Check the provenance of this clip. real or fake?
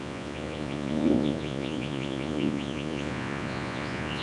fake